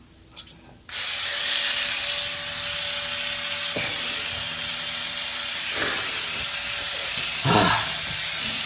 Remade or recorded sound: recorded